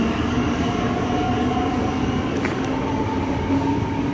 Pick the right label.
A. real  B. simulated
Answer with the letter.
B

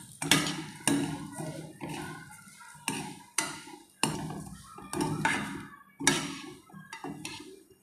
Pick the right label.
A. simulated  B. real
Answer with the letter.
B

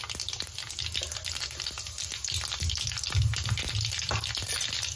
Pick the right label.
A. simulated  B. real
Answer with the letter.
B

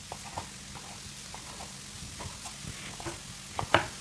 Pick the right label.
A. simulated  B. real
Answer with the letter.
B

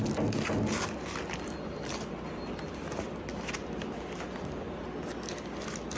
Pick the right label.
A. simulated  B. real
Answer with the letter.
B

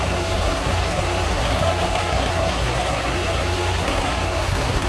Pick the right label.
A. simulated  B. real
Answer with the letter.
A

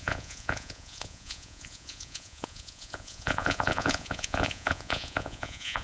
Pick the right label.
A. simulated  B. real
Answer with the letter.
A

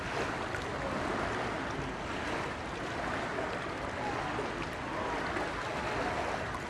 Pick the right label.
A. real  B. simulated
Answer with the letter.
A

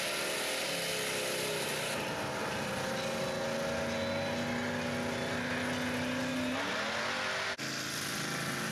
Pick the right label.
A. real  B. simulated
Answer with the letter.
A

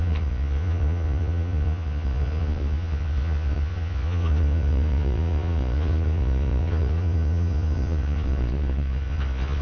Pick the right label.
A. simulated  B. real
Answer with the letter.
A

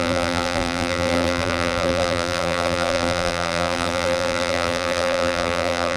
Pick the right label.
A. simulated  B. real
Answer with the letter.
A